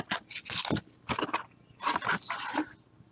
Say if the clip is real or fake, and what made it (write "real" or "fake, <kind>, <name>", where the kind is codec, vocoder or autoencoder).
real